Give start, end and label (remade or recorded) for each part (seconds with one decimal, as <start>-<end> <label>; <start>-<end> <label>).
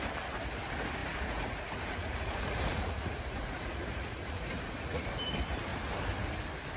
0.0-1.0 recorded; 1.0-5.1 remade; 5.1-6.8 recorded